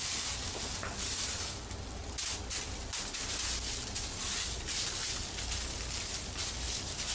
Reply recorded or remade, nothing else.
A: recorded